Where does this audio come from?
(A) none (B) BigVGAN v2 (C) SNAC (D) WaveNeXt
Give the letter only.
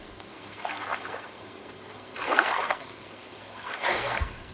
C